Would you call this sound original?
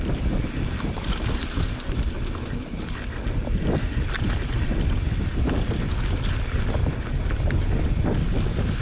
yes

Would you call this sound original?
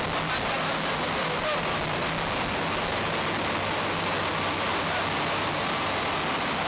yes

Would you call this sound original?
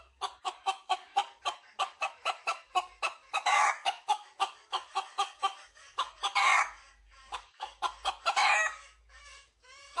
no